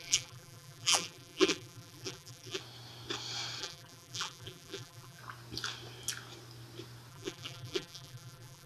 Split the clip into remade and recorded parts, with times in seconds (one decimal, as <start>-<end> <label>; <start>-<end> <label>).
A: 0.0-2.6 remade; 2.6-3.6 recorded; 3.6-5.2 remade; 5.2-7.1 recorded; 7.1-8.7 remade